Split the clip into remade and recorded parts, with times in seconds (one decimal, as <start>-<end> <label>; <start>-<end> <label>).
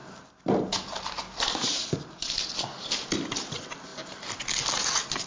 0.0-5.3 recorded